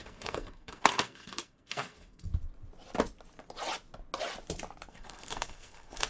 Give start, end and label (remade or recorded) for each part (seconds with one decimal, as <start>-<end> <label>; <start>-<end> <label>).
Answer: 0.0-2.3 remade; 2.3-4.9 recorded; 4.9-6.1 remade